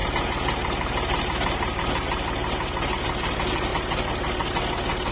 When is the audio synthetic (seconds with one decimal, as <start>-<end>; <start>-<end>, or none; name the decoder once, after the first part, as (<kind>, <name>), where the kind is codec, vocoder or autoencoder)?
none